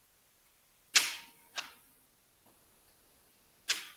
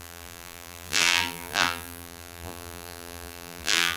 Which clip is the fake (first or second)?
second